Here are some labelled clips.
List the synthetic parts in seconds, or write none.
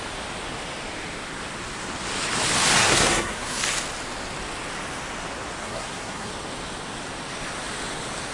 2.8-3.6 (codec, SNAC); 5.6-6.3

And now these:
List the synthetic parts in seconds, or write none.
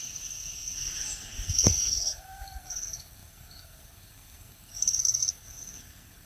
0.0-6.3 (codec, SNAC)